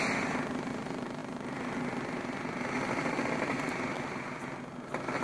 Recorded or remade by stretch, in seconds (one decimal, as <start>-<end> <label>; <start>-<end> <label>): 0.0-5.2 recorded